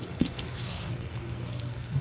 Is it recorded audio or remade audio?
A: remade